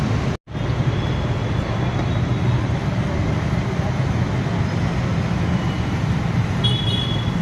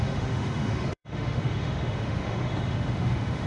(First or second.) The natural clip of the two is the first